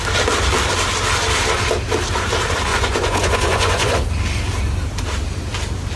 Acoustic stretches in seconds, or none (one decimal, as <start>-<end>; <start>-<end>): 0.0-2.7; 4.0-6.0